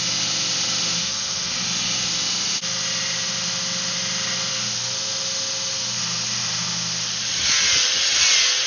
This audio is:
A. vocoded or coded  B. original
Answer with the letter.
B